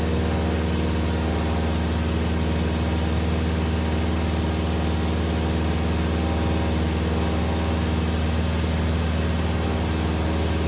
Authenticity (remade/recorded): recorded